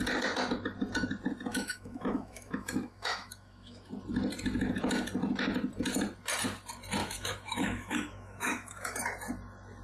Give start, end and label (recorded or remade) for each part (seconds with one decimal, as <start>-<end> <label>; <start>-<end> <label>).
0.0-1.5 recorded; 1.5-3.9 remade; 3.9-7.0 recorded; 7.0-9.0 remade; 9.0-9.8 recorded